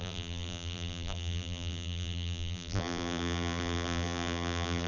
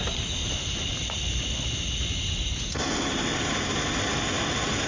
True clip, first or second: second